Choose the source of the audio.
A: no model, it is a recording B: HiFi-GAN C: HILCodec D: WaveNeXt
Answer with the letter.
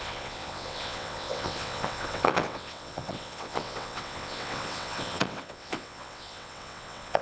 D